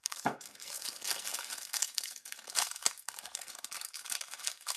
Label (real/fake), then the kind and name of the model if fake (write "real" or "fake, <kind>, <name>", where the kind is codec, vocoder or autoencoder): fake, codec, SNAC